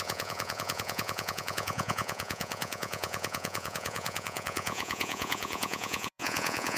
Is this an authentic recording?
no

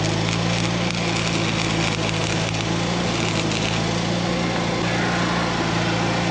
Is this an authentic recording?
yes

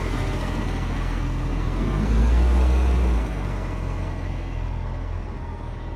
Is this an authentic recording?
no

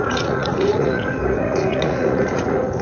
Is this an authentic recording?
no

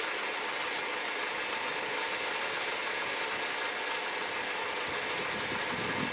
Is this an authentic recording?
yes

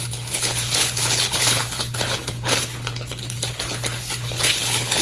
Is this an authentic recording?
no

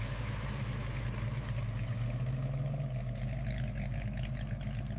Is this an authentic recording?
yes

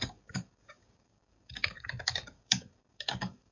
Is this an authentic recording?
no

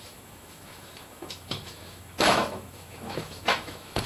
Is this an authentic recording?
no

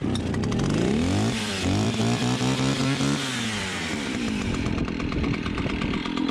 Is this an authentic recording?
no